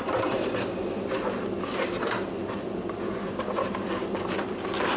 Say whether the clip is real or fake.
real